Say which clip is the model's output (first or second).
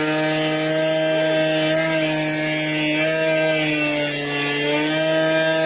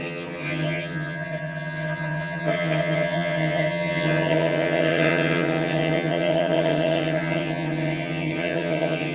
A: second